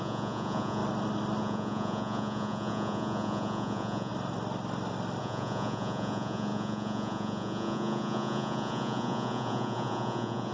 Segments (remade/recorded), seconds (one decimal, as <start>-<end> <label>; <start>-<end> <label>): 0.0-0.8 remade; 0.8-1.4 recorded; 1.4-4.1 remade; 4.1-5.2 recorded; 5.2-10.5 remade